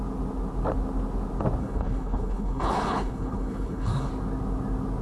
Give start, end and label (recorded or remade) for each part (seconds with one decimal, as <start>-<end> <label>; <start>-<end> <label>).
0.0-1.6 recorded; 1.6-4.1 remade; 4.1-5.0 recorded